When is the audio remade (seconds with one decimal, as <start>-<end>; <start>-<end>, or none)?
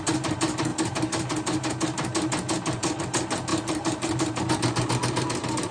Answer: none